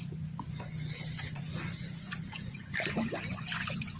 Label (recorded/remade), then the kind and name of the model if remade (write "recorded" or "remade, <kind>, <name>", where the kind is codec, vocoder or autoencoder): remade, vocoder, Vocos